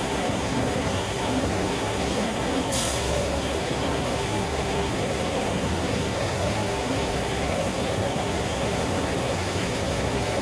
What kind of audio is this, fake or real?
fake